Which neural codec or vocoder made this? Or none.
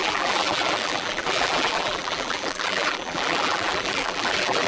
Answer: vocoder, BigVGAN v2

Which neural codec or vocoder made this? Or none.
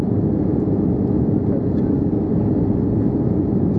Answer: vocoder, BigVGAN v2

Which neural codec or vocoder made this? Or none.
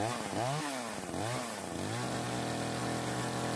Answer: none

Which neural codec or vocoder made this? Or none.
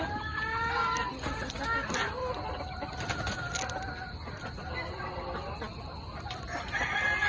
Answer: none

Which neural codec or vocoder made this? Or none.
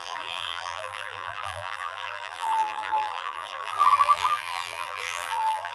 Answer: vocoder, BigVGAN v2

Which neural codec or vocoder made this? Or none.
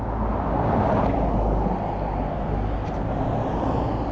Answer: none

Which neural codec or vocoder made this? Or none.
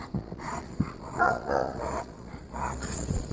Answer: vocoder, Vocos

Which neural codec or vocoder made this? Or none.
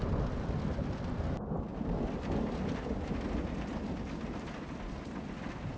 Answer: none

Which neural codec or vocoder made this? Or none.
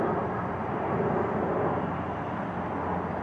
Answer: none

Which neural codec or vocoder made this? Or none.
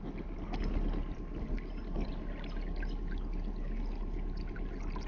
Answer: none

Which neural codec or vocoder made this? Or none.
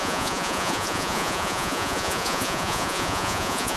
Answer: vocoder, Vocos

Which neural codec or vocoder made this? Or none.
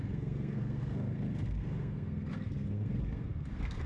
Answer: codec, SNAC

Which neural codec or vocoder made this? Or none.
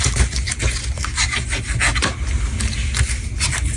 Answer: none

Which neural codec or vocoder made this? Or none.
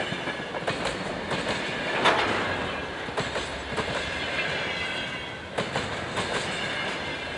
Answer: none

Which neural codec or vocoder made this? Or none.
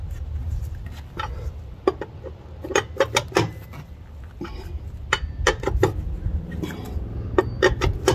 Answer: none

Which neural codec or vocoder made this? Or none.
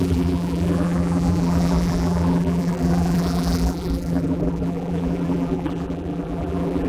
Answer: vocoder, BigVGAN v2